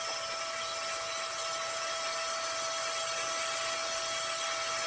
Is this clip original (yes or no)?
yes